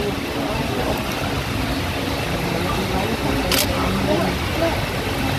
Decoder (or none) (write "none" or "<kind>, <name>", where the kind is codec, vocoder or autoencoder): none